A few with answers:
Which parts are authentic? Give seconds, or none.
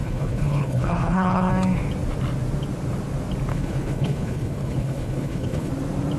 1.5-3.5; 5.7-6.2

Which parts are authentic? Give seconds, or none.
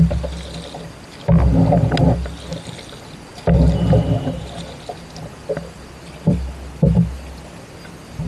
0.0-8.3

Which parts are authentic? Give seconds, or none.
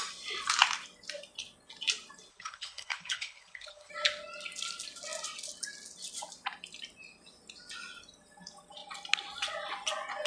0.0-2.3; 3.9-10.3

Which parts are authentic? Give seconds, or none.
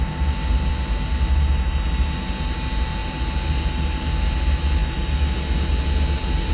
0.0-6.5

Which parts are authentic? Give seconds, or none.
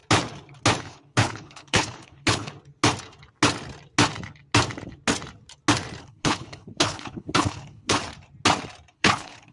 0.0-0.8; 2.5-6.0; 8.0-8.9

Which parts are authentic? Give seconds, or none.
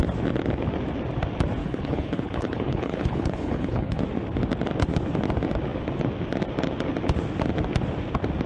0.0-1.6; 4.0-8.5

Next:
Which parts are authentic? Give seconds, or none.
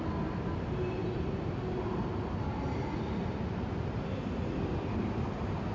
0.0-5.7